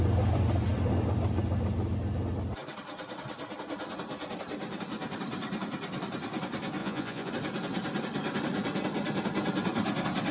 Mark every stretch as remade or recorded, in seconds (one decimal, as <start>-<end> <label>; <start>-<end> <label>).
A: 0.0-6.8 recorded; 6.8-7.3 remade; 7.3-10.3 recorded